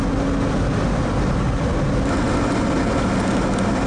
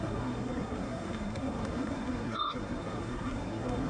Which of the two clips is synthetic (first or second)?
second